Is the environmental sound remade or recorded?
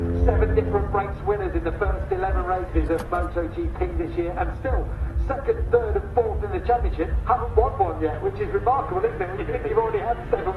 recorded